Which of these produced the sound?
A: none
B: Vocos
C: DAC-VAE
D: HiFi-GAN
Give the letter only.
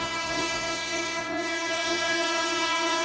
B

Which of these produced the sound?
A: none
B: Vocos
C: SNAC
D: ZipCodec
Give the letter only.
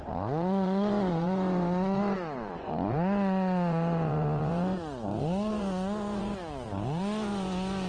B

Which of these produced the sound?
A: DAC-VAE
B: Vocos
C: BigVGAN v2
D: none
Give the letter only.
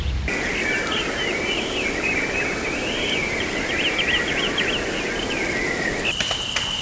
D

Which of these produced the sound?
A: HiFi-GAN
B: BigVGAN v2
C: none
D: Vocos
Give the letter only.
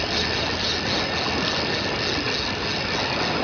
C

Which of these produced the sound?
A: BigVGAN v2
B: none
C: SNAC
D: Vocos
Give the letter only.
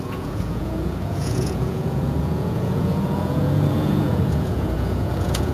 D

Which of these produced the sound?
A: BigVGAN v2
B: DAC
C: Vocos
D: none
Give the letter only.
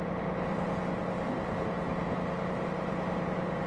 D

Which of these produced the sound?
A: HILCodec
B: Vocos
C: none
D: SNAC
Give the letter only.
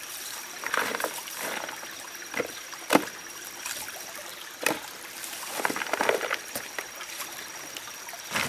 C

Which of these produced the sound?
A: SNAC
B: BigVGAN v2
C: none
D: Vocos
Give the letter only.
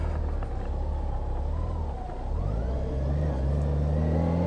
C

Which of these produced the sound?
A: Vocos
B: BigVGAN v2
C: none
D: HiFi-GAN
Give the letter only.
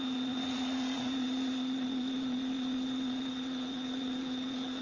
A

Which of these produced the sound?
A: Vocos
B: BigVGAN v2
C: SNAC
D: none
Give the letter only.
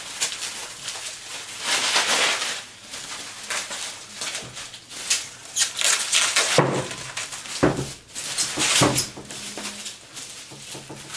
D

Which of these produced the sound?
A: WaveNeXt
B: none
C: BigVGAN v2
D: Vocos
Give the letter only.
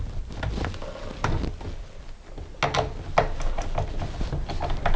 B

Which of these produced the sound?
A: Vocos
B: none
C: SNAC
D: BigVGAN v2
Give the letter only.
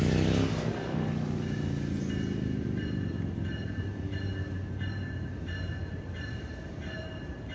B